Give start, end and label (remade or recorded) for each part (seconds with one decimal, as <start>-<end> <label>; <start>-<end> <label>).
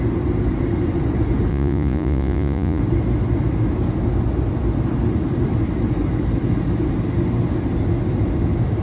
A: 0.0-1.5 recorded; 1.5-2.8 remade; 2.8-8.8 recorded